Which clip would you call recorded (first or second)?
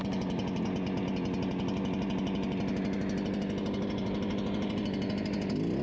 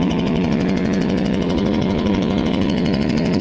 first